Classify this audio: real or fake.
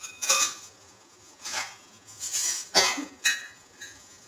fake